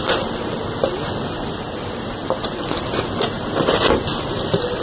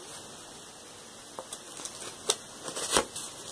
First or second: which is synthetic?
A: first